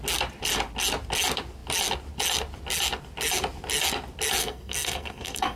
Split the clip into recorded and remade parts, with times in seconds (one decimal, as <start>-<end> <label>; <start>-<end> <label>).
0.0-4.4 recorded; 4.4-5.6 remade